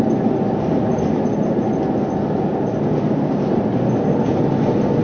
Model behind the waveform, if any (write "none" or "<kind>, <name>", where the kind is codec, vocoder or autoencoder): none